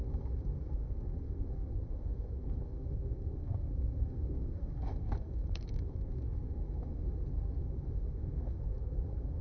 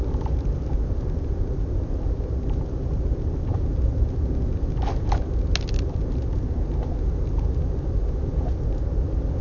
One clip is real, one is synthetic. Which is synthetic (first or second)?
first